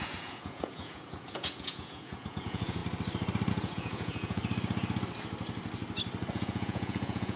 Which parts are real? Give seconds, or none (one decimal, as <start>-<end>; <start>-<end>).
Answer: 2.8-3.5; 4.4-6.3